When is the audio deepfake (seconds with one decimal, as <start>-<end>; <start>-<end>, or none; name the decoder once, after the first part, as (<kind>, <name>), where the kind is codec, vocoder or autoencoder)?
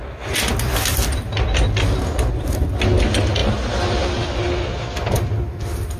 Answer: none